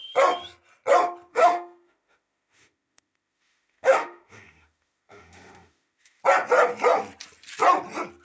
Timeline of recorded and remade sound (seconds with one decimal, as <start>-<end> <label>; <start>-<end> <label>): 0.0-1.3 recorded; 1.3-6.2 remade; 6.2-8.2 recorded